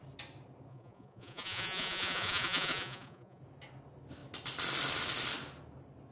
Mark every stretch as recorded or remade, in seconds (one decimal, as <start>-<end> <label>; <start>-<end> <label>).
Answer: 0.0-0.7 recorded; 0.7-3.4 remade; 3.4-6.1 recorded